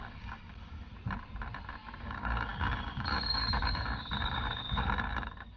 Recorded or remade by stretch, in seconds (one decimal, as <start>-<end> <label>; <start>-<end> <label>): 0.0-0.9 remade; 0.9-2.0 recorded; 2.0-5.6 remade